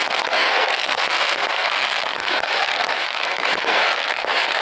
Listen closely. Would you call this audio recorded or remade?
remade